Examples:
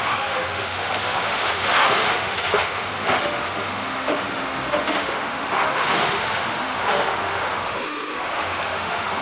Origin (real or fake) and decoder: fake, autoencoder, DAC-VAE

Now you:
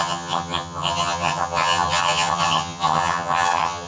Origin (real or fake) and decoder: fake, vocoder, HiFi-GAN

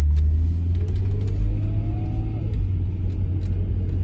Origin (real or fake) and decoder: real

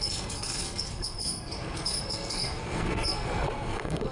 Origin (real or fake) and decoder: fake, codec, SNAC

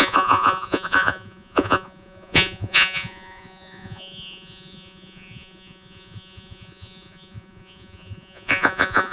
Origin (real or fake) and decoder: fake, vocoder, Vocos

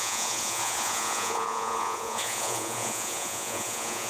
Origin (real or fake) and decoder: fake, vocoder, Vocos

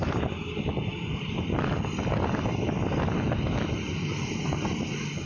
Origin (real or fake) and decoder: real